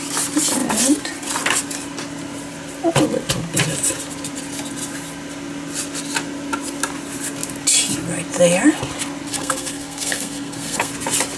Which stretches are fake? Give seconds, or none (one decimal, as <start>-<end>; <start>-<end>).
9.3-10.9